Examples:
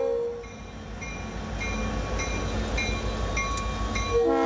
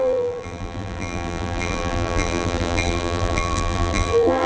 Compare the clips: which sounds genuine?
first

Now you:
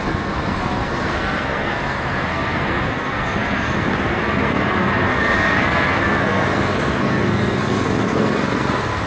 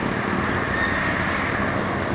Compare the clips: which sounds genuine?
second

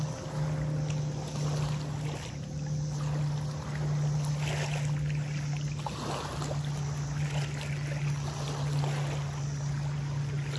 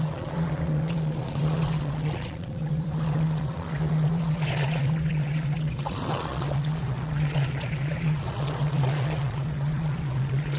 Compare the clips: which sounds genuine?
first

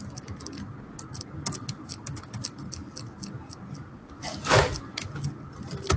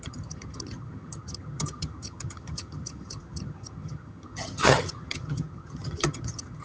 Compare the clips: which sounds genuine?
first